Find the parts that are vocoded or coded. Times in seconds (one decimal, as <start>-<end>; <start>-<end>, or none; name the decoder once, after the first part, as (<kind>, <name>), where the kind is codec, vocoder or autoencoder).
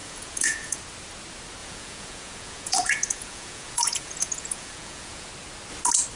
0.0-0.8 (vocoder, Vocos); 1.6-5.3